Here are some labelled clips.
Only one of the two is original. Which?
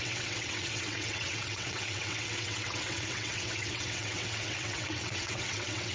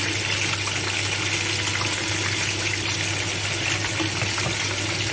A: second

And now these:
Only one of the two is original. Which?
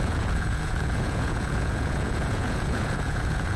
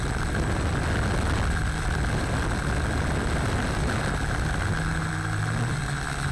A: second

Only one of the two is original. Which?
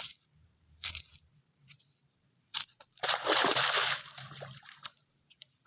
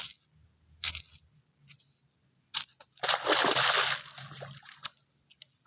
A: second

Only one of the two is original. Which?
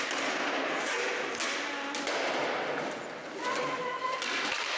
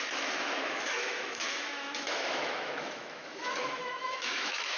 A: first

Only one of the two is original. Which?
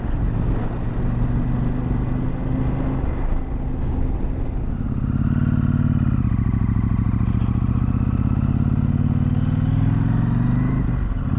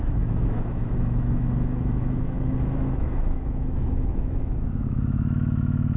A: first